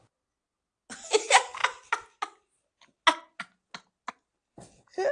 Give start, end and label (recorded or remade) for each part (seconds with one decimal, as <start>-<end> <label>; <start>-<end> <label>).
0.0-5.1 recorded